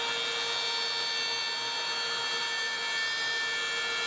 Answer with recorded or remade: recorded